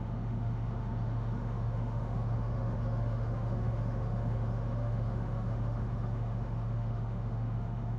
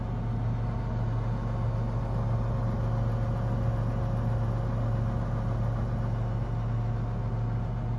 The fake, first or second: first